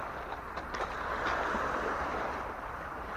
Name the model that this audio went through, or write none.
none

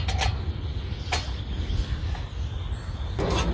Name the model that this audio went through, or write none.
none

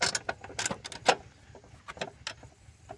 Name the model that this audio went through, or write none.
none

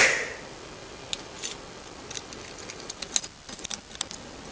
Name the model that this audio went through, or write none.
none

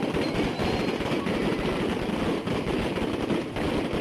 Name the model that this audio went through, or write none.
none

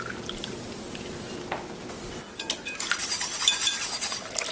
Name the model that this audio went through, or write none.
none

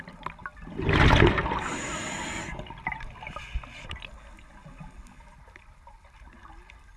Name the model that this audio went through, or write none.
none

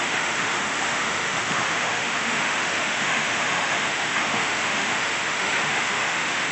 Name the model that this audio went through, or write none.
autoencoder, DAC-VAE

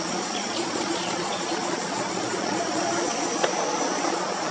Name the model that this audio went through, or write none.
vocoder, Vocos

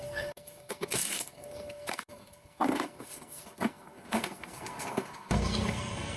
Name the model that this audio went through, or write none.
codec, SNAC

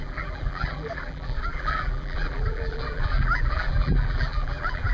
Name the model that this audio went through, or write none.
vocoder, BigVGAN v2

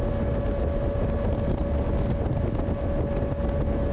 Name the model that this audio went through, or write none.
none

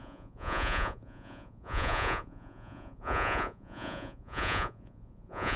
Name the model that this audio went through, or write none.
vocoder, Vocos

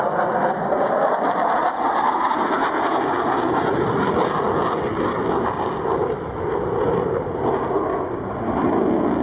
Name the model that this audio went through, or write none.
none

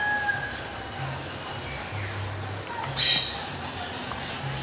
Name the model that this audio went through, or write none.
none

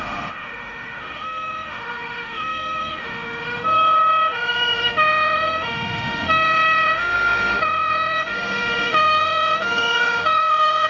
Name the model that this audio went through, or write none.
autoencoder, DAC-VAE